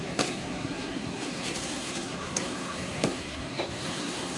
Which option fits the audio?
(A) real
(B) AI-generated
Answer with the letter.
B